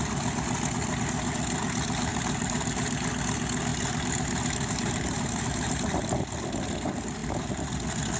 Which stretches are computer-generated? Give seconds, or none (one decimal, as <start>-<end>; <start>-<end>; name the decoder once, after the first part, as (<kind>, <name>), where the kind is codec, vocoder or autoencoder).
2.1-3.1 (vocoder, BigVGAN v2); 3.7-6.2